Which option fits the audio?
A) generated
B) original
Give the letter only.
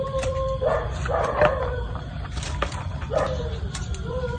A